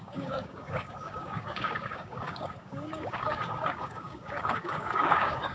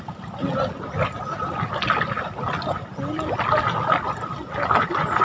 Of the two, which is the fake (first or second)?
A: first